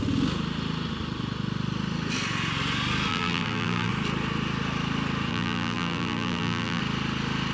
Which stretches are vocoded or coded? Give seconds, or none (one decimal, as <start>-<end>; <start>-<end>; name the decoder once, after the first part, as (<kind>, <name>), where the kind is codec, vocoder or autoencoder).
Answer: 3.1-3.9 (vocoder, BigVGAN v2); 5.3-6.8